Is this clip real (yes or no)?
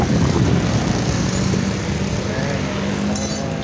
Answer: yes